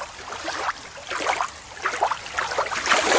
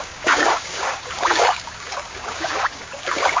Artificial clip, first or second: second